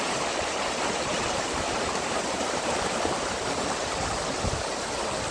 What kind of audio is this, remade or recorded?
remade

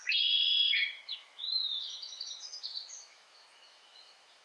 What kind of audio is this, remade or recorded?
remade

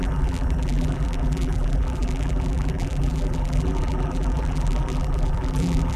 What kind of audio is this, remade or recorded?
remade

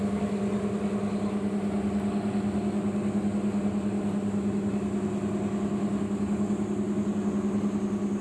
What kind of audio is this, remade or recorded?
recorded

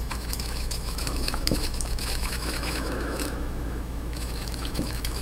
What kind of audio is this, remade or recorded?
remade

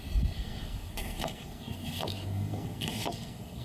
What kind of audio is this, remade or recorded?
remade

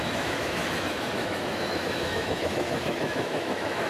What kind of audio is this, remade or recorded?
remade